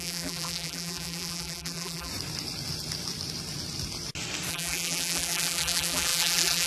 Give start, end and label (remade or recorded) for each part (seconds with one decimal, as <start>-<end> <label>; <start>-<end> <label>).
0.0-2.1 remade; 2.1-4.5 recorded; 4.5-6.7 remade